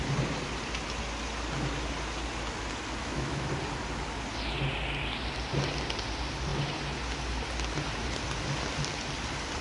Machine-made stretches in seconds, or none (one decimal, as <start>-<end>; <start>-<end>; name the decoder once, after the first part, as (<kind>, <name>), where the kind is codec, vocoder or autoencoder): 3.0-3.5 (autoencoder, DAC-VAE)